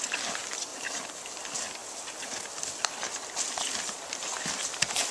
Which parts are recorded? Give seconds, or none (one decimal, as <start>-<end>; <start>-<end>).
0.0-0.7; 1.3-5.1